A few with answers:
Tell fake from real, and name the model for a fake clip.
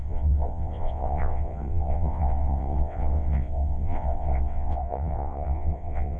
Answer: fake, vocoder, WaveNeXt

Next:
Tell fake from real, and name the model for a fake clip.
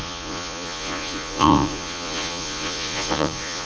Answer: fake, vocoder, Vocos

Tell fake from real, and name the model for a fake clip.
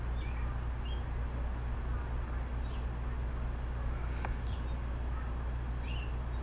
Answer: real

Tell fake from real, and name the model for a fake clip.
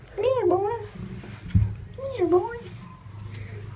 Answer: real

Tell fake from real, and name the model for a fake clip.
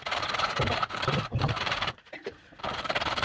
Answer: fake, vocoder, BigVGAN v2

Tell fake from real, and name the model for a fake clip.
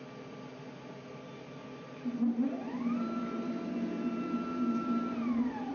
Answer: real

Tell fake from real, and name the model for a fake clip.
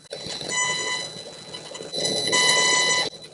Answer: real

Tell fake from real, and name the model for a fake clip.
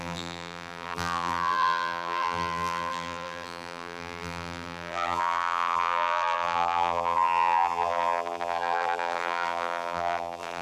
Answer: fake, vocoder, BigVGAN v2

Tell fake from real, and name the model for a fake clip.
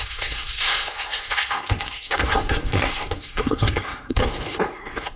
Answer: fake, codec, SNAC